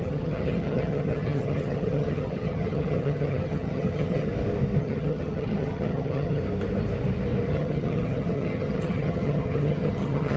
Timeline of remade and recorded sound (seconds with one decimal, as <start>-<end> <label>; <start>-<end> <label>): 0.0-4.3 remade; 4.3-4.8 recorded; 4.8-6.4 remade; 6.4-7.5 recorded; 7.5-10.4 remade